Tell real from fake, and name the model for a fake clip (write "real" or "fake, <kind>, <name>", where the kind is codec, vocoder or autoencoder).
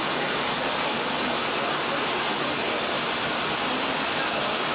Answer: real